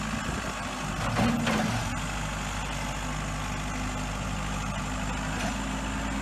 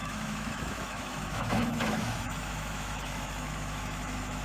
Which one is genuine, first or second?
first